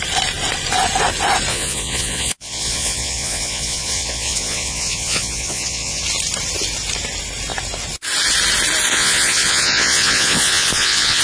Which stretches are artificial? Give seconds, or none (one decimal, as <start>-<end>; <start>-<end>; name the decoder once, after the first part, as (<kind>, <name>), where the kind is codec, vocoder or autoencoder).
1.5-6.0 (vocoder, Vocos); 8.9-11.2